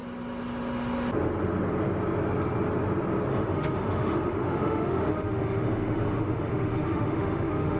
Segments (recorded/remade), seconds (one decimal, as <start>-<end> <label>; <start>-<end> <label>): 0.0-3.3 recorded; 3.3-7.8 remade